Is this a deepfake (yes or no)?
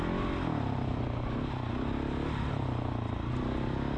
no